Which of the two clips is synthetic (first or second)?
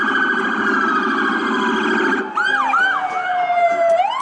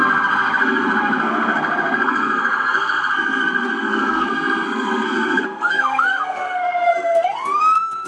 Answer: second